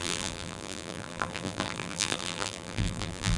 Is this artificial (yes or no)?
yes